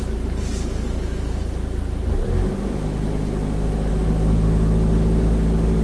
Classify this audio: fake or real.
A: real